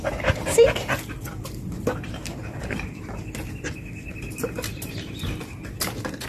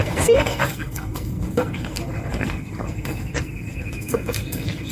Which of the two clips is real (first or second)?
first